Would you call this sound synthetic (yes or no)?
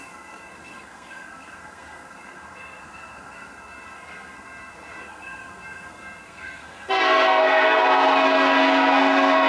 yes